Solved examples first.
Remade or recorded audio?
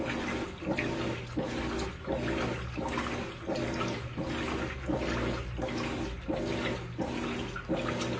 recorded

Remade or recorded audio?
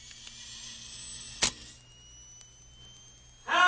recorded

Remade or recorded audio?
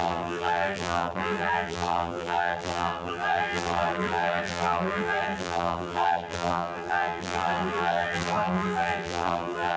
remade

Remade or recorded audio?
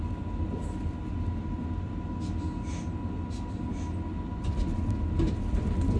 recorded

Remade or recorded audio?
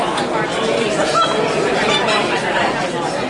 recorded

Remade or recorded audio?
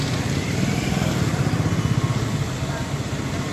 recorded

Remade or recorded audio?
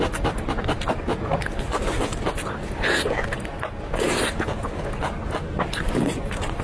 recorded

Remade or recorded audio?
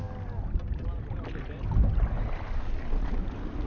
recorded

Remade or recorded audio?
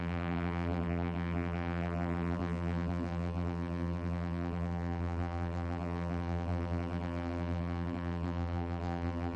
remade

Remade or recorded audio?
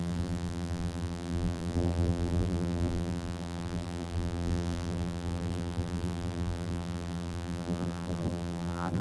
remade